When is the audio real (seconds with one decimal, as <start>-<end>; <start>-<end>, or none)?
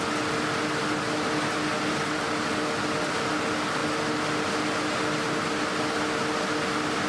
0.0-7.1